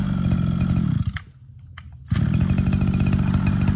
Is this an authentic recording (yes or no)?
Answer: yes